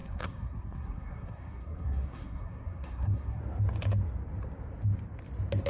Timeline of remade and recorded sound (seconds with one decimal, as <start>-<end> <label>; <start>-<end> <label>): 0.0-3.4 remade; 3.4-5.7 recorded